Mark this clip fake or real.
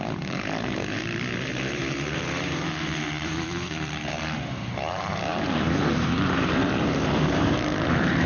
fake